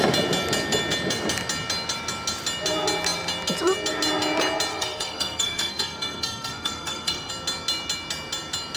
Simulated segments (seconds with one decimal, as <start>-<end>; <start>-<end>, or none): 4.7-7.3

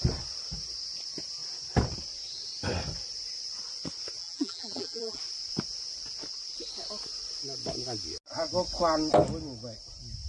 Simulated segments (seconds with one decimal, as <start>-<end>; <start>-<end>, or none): 4.2-5.2

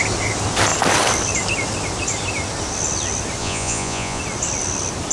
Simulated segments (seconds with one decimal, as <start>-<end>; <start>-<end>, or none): 3.4-4.2

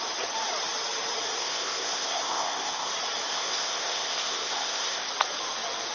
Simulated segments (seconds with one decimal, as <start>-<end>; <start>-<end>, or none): 1.4-2.9; 3.3-5.1